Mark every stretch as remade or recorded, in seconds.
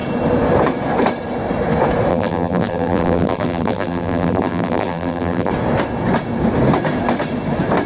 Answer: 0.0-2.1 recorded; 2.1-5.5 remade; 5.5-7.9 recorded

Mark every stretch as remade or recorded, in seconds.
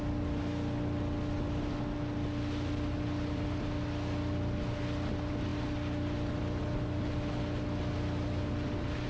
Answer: 0.0-9.1 recorded